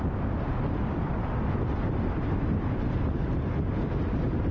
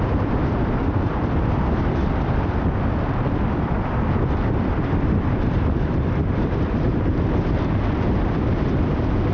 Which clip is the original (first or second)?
first